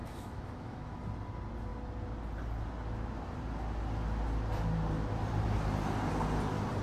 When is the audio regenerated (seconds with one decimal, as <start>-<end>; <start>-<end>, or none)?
0.0-1.0